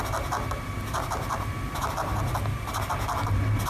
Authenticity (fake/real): real